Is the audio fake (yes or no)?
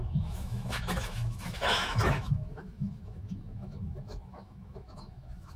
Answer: yes